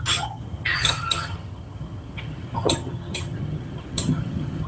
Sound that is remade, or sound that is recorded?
remade